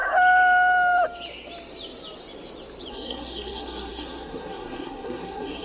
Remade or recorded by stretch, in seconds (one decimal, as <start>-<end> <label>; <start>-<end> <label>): 0.0-2.9 recorded; 2.9-5.6 remade